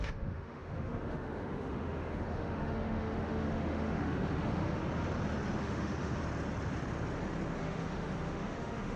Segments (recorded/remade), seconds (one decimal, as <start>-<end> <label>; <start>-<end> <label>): 0.0-4.8 remade; 4.8-5.6 recorded; 5.6-6.2 remade; 6.2-7.6 recorded; 7.6-9.0 remade